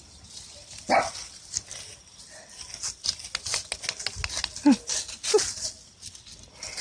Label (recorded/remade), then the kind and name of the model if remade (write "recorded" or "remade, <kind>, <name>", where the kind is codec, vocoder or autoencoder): recorded